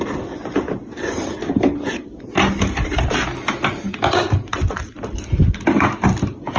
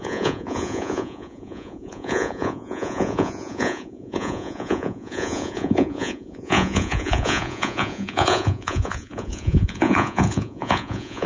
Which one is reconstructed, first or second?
second